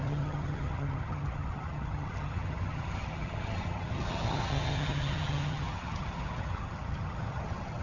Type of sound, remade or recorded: remade